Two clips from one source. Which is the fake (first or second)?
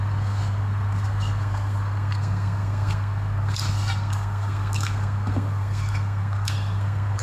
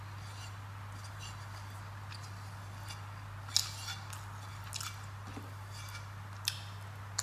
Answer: first